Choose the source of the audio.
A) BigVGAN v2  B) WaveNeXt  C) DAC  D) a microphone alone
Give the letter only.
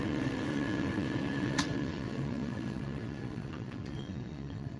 B